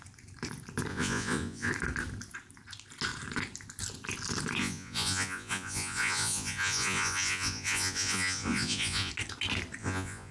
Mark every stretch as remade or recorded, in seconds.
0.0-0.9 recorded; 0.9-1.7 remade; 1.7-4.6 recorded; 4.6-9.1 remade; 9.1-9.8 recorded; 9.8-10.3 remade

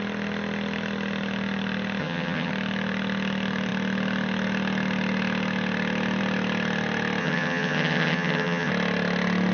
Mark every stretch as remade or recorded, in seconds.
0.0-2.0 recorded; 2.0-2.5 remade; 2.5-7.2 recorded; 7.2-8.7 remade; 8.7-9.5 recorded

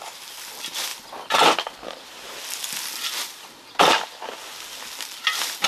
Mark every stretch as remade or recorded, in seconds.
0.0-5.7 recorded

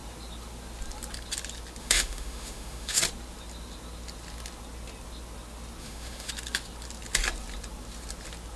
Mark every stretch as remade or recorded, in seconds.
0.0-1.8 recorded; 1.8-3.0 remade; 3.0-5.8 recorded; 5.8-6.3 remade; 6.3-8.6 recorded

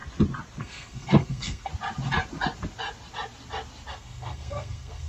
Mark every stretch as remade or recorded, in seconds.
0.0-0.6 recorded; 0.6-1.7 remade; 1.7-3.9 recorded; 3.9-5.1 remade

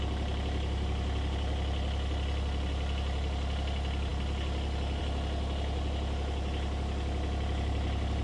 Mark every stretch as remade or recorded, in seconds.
0.0-8.2 recorded